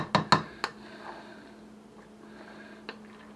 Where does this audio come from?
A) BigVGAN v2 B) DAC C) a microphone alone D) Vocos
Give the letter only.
C